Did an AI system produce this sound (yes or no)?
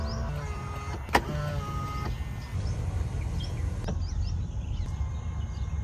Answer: no